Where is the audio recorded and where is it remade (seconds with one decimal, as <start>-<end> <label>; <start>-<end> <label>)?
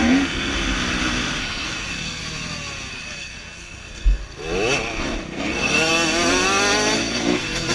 0.0-0.5 remade; 0.5-1.4 recorded; 1.4-2.2 remade; 2.2-2.9 recorded; 2.9-4.2 remade; 4.2-5.2 recorded; 5.2-5.9 remade; 5.9-7.0 recorded; 7.0-7.7 remade